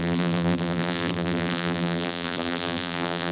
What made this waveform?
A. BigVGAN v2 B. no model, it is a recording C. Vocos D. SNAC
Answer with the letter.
A